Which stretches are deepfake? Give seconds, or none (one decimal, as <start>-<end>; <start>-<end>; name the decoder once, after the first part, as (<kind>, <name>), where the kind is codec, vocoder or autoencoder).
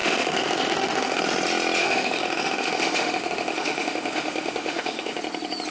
0.0-1.2 (autoencoder, DAC-VAE); 1.8-5.2